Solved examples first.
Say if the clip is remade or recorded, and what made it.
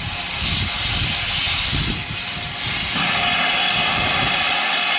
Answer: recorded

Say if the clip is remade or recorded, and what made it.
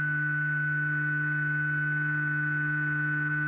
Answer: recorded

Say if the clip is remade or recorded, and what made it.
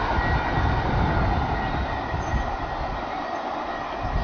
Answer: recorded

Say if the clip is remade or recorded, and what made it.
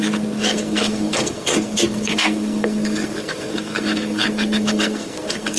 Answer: remade, codec, SNAC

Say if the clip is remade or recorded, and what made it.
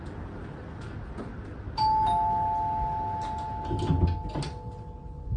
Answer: recorded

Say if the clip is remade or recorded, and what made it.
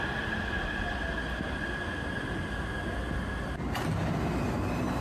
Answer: recorded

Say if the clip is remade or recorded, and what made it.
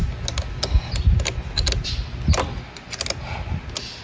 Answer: recorded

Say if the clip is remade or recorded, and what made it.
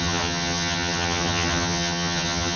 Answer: remade, vocoder, HiFi-GAN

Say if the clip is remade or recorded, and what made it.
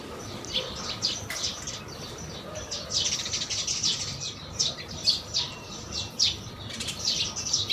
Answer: recorded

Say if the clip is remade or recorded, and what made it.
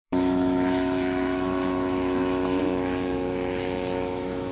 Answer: remade, autoencoder, DAC-VAE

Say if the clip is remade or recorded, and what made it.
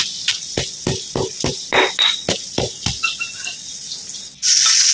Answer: recorded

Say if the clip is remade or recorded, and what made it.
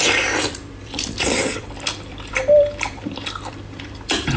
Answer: remade, vocoder, BigVGAN v2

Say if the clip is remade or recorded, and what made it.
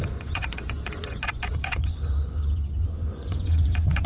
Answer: remade, vocoder, Vocos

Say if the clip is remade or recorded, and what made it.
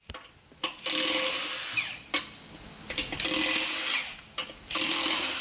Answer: recorded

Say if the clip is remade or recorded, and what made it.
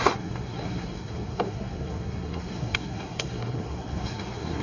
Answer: remade, codec, SNAC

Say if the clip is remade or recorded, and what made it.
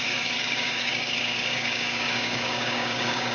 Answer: remade, codec, DAC